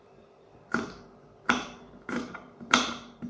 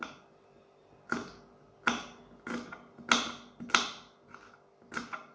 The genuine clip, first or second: second